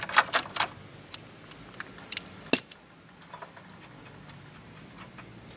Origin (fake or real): real